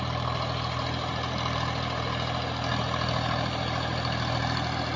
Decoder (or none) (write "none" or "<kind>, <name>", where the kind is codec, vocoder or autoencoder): none